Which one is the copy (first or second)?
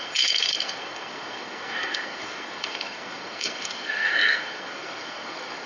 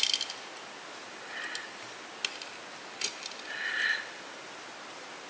first